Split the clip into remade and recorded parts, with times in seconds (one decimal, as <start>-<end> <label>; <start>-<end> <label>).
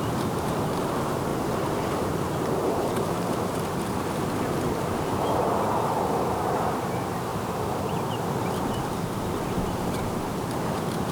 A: 0.0-11.1 remade